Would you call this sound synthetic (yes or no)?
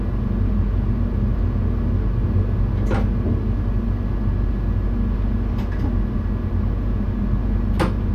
no